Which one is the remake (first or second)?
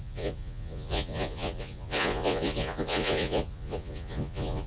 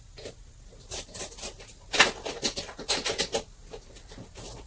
first